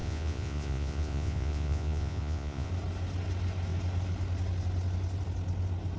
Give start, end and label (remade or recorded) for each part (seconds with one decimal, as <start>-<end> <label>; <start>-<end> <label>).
0.0-2.7 remade; 2.7-6.0 recorded